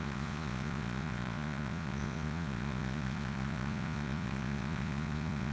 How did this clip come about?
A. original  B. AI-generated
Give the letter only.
B